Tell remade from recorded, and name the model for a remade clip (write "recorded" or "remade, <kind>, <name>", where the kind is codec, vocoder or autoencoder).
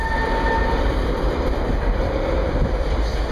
recorded